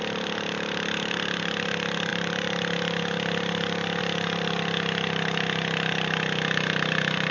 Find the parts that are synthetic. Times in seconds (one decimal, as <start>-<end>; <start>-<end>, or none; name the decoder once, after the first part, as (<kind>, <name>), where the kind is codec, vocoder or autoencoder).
0.0-7.3 (vocoder, BigVGAN v2)